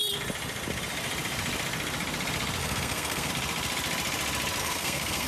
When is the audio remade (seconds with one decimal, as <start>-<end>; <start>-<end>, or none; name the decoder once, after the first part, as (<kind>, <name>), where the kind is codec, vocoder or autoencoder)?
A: 2.6-3.3 (codec, SNAC); 4.6-5.3